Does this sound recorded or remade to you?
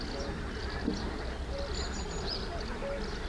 recorded